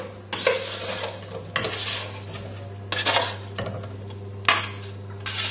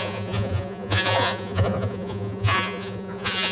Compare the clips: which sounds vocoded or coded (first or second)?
second